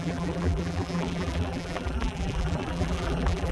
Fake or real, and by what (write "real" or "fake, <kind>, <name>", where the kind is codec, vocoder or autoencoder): fake, vocoder, BigVGAN v2